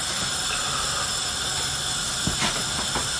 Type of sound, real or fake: real